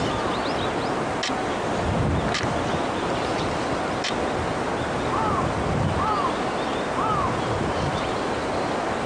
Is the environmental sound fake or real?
real